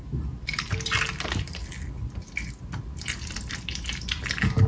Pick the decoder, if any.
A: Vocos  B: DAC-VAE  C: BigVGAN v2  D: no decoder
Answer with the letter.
D